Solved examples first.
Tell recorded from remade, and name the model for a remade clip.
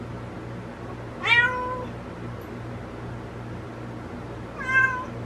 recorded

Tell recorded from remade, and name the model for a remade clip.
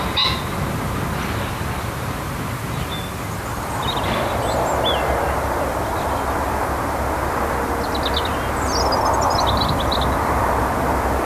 recorded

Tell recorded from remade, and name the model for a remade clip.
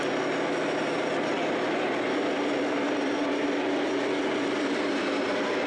recorded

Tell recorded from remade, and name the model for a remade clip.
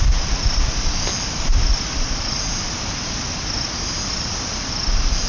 recorded